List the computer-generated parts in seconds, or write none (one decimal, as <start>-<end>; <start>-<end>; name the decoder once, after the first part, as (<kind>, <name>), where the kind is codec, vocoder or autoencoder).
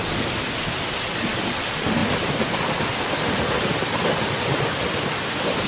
0.0-1.2 (vocoder, BigVGAN v2)